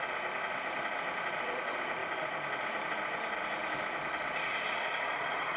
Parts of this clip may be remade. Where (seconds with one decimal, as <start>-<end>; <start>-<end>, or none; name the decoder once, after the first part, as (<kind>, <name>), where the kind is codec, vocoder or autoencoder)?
2.0-2.9 (vocoder, BigVGAN v2); 3.6-4.8